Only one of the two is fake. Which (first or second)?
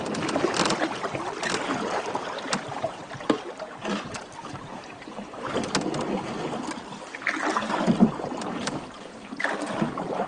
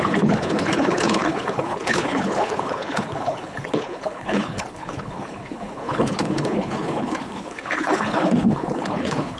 second